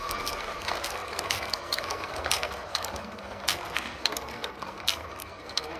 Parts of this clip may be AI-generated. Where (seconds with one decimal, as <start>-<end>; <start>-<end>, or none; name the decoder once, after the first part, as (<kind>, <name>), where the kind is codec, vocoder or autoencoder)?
0.0-5.8 (codec, SNAC)